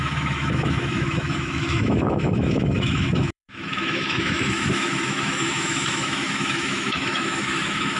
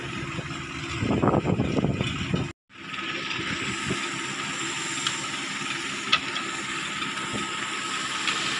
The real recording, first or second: second